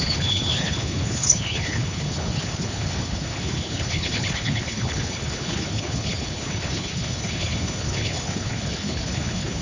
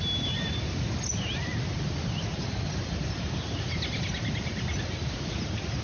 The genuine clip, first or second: second